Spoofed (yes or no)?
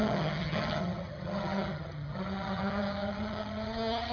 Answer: yes